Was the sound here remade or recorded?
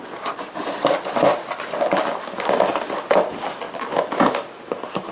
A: recorded